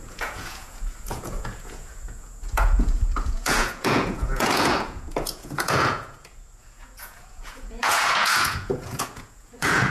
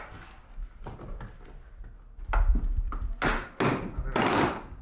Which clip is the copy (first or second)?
first